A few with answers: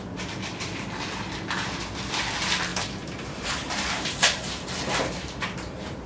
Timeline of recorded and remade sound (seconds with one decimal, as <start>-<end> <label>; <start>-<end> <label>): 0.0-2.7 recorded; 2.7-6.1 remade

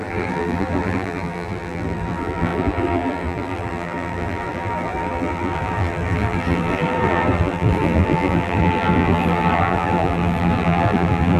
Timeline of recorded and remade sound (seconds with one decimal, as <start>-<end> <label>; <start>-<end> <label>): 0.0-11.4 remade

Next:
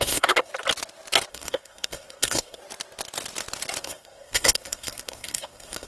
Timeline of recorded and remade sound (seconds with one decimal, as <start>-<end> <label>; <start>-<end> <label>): 0.0-0.5 remade; 0.5-1.3 recorded; 1.3-2.6 remade; 2.6-3.8 recorded; 3.8-5.9 remade

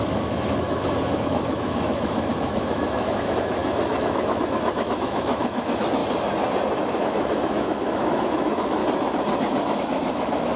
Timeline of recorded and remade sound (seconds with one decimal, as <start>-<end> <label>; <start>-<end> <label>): 0.0-6.0 remade; 6.0-6.8 recorded; 6.8-8.8 remade; 8.8-9.8 recorded; 9.8-10.6 remade